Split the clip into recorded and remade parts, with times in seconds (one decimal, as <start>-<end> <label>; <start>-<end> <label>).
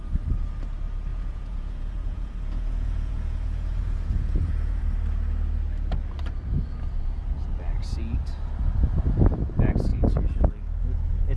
0.0-1.1 recorded; 1.1-4.8 remade; 4.8-11.4 recorded